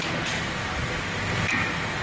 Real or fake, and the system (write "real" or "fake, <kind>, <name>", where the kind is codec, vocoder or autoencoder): real